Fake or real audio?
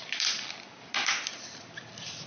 real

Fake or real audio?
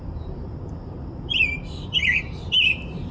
fake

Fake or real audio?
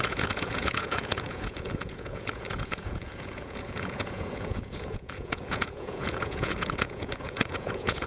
fake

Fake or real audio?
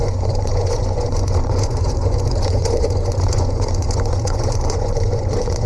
fake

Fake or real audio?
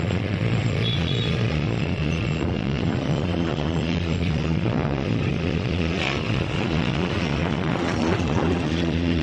fake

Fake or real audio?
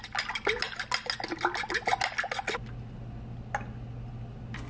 real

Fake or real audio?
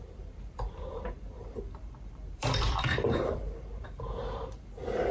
fake